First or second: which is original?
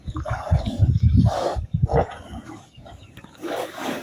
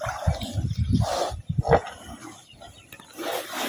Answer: second